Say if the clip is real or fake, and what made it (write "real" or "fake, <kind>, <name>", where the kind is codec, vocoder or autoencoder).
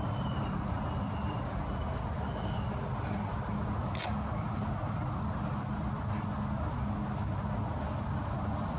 real